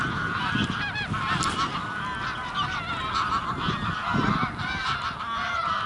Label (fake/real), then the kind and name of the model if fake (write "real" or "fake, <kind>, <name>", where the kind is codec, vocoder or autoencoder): real